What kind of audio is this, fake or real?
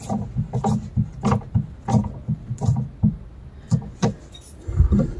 real